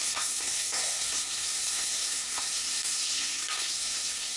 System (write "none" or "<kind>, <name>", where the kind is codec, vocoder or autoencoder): codec, SNAC